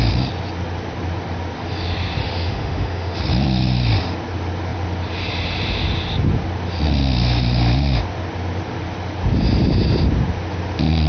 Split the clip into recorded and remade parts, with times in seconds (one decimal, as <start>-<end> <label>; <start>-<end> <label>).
0.0-2.2 recorded; 2.2-3.2 remade; 3.2-11.1 recorded